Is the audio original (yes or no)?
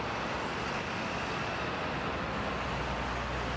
yes